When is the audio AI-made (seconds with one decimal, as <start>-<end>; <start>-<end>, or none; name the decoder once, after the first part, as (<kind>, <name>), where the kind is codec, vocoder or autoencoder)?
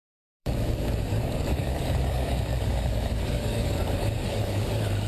0.0-5.1 (codec, DAC)